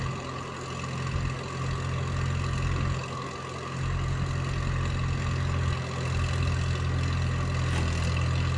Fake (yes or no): no